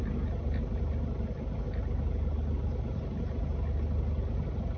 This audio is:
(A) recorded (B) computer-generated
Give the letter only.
A